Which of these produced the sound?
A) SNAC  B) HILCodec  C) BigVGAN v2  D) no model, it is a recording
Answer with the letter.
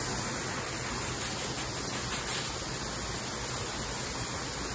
D